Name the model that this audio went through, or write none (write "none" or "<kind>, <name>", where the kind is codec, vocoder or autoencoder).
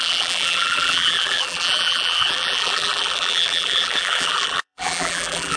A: vocoder, BigVGAN v2